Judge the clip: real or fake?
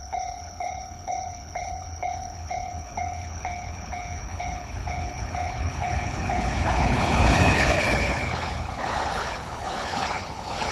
fake